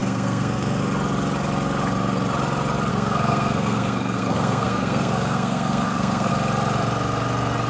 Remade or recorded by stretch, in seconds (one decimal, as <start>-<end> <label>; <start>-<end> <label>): 0.0-0.8 remade; 0.8-2.9 recorded; 2.9-6.3 remade; 6.3-7.7 recorded